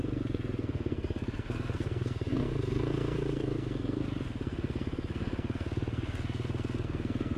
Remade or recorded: remade